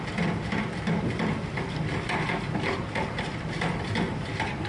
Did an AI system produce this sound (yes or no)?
no